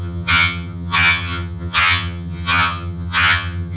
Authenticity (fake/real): fake